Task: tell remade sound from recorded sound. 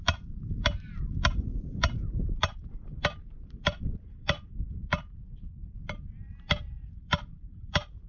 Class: remade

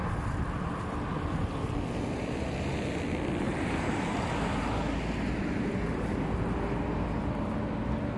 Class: recorded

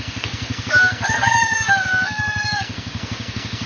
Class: remade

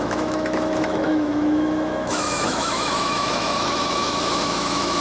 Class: remade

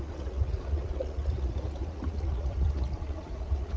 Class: remade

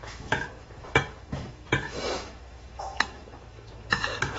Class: remade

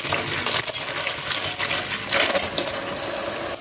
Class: recorded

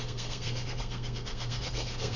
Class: remade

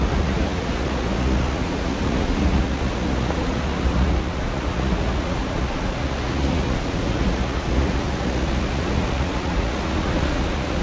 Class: remade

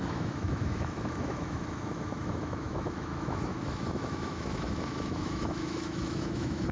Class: remade